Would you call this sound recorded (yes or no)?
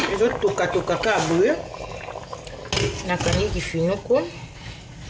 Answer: yes